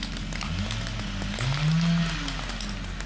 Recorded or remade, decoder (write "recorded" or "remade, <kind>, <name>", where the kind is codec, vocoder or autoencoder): recorded